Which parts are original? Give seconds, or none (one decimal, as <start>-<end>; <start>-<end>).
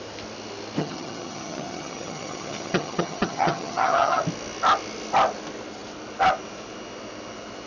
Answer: 0.0-0.8; 4.2-7.7